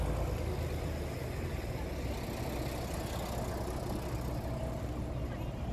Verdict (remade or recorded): recorded